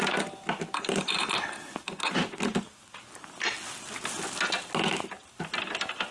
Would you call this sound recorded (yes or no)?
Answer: yes